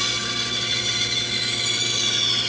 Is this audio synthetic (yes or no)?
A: no